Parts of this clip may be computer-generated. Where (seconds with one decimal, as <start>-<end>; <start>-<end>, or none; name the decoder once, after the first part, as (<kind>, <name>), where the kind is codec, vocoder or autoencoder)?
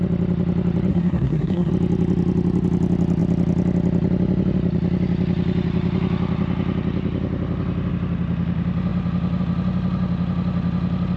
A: 0.9-1.7 (codec, SNAC)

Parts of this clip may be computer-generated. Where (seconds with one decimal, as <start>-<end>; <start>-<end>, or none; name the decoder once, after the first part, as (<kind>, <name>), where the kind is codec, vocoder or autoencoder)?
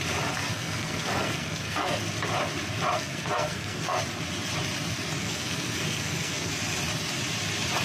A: 0.4-2.0 (codec, SNAC); 2.9-4.0; 5.2-6.5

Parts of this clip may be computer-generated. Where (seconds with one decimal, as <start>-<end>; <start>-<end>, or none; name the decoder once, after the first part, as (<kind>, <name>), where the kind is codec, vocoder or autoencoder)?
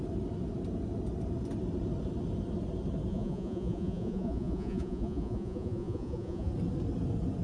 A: 3.1-6.5 (vocoder, Vocos)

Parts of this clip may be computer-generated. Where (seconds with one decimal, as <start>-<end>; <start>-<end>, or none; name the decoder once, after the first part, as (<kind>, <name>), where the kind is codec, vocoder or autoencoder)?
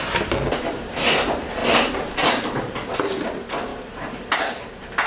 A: none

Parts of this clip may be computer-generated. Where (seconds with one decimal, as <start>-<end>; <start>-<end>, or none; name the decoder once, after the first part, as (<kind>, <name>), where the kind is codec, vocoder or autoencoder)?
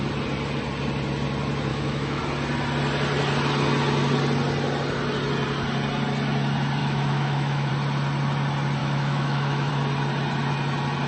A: 1.7-2.2 (autoencoder, DAC-VAE); 6.8-7.7; 8.8-9.7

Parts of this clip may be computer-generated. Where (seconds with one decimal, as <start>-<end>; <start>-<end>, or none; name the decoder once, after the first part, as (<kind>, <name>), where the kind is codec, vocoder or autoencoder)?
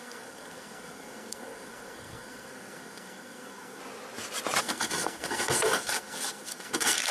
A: 0.0-3.8 (codec, SNAC); 4.6-7.1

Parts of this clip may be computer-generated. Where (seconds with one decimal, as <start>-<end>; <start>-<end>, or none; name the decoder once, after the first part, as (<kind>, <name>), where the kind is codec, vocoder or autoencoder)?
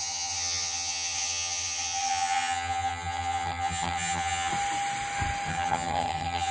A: 0.0-4.5 (vocoder, HiFi-GAN); 5.5-6.5